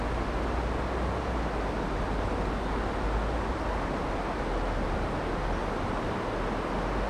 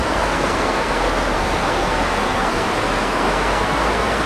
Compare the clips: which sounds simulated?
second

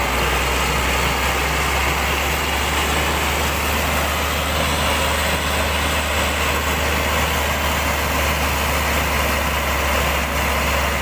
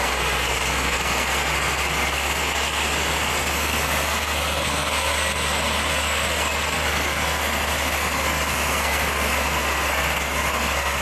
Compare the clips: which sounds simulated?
second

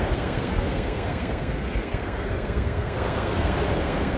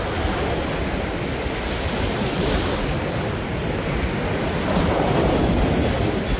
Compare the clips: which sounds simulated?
first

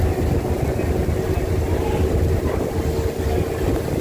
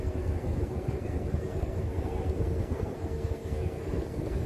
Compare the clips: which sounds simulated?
second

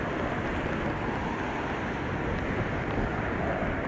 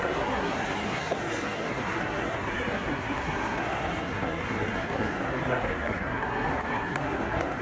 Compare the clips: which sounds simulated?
second